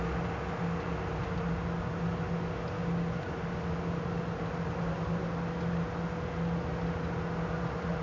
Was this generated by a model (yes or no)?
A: no